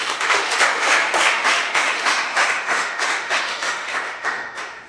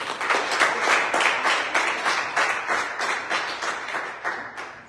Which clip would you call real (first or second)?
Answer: second